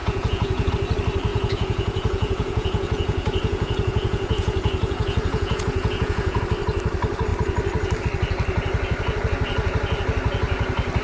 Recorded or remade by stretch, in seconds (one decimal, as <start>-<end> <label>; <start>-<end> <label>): 0.0-0.7 remade; 0.7-1.3 recorded; 1.3-6.4 remade; 6.4-11.0 recorded